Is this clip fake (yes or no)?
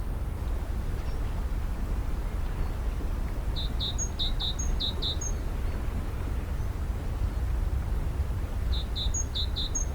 no